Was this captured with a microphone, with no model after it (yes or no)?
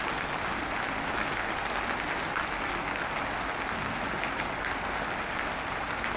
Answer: yes